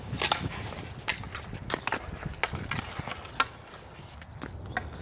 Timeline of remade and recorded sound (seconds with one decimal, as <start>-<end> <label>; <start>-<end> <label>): 0.0-5.0 recorded